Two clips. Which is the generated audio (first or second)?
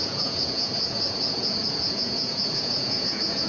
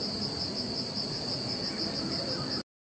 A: first